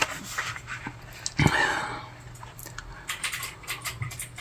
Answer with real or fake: real